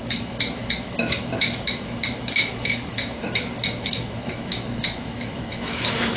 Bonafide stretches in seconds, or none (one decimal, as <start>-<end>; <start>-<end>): none